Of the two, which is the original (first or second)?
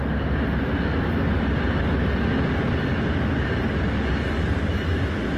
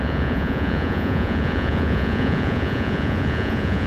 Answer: first